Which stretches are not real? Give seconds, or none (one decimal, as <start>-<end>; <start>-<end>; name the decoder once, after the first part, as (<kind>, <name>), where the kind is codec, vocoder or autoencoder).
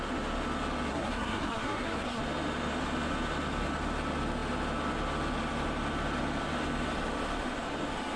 0.9-2.2 (codec, SNAC)